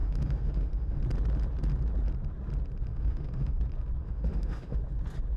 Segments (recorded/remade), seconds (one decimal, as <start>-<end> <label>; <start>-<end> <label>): 0.0-1.0 remade; 1.0-2.9 recorded; 2.9-3.6 remade; 3.6-4.0 recorded; 4.0-4.8 remade; 4.8-5.4 recorded